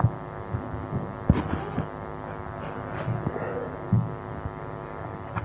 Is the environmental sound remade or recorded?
recorded